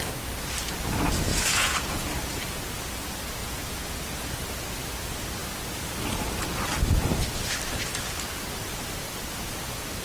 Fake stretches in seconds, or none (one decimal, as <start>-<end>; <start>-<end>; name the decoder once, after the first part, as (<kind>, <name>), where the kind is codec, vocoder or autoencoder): 1.3-2.2 (vocoder, Vocos); 3.4-4.0